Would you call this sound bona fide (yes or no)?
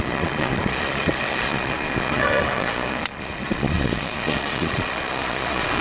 no